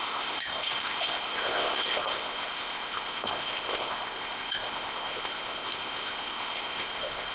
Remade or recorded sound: remade